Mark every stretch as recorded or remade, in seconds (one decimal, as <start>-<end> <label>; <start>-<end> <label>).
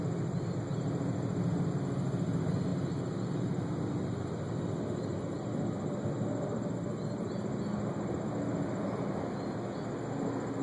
0.0-10.6 recorded